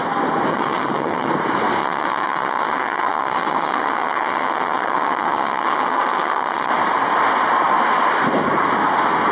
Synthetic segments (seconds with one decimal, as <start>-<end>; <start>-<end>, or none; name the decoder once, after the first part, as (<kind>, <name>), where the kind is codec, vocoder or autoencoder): 0.5-1.3 (vocoder, WaveNeXt); 1.8-6.7